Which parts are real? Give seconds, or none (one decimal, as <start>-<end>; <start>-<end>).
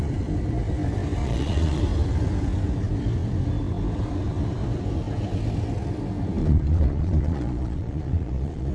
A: 0.0-1.2; 1.8-6.4